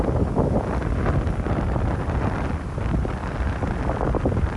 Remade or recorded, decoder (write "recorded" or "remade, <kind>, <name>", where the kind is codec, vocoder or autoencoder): recorded